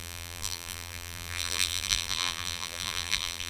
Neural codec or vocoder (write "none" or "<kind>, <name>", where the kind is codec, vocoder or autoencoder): vocoder, BigVGAN v2